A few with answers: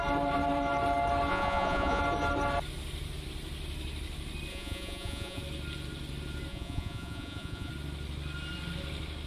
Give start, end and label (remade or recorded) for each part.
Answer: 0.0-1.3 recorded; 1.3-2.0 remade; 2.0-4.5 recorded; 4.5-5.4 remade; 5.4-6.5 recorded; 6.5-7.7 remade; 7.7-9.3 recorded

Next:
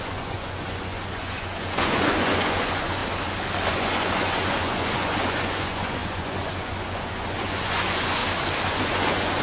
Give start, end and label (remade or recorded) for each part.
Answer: 0.0-3.0 remade; 3.0-3.7 recorded; 3.7-8.2 remade; 8.2-8.7 recorded; 8.7-9.4 remade